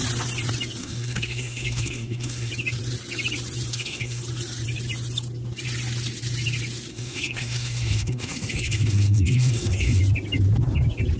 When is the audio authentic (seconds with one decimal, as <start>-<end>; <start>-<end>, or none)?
0.0-0.8; 2.5-3.7; 4.2-6.9; 10.0-11.2